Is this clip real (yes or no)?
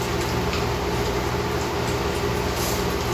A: yes